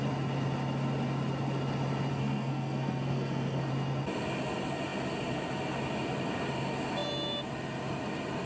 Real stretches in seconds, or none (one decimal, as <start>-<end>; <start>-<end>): 0.0-2.1; 3.7-8.5